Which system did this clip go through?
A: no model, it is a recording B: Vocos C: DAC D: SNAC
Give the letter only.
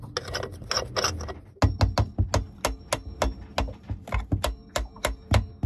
A